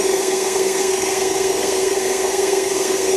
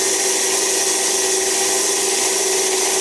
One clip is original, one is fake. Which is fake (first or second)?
first